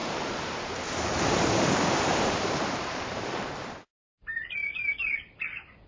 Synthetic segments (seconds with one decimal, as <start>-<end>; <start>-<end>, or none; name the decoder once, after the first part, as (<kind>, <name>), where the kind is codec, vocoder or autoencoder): 0.0-3.5 (vocoder, BigVGAN v2); 4.6-5.3